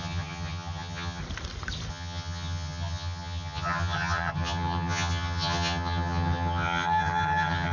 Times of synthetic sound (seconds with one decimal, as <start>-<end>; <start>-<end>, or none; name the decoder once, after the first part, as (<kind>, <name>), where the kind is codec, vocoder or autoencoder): 0.0-1.2 (vocoder, HiFi-GAN); 1.9-7.7